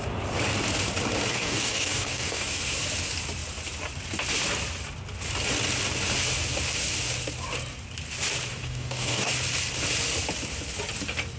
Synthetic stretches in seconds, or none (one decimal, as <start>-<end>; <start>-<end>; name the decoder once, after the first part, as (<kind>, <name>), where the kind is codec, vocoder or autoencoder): 1.3-2.6 (codec, DAC); 8.5-9.3